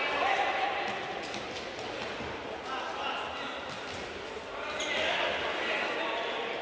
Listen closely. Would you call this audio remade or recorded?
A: recorded